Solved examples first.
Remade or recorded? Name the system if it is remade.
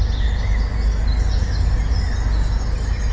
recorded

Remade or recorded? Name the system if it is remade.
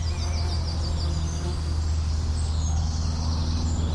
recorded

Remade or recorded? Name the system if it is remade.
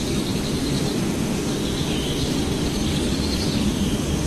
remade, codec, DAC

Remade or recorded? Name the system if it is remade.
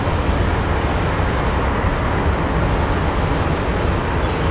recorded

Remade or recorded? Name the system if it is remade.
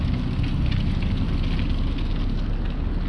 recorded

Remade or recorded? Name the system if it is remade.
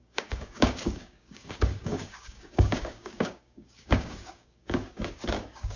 remade, codec, DAC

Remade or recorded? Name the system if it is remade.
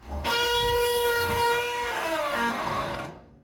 remade, codec, DAC